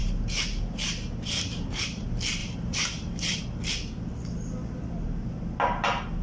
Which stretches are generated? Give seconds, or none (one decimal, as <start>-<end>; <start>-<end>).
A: 0.0-1.8; 2.4-3.4